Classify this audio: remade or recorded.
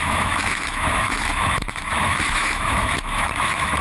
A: remade